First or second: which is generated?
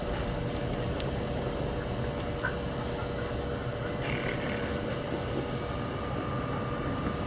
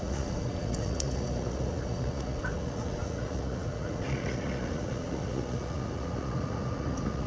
second